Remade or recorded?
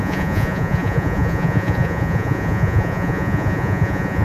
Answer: remade